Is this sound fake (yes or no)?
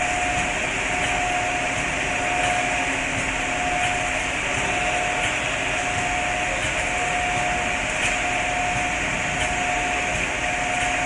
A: no